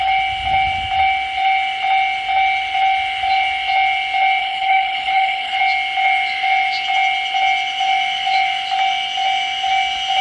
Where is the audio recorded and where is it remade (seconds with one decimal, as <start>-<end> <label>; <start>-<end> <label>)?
0.0-4.4 recorded; 4.4-5.6 remade; 5.6-10.2 recorded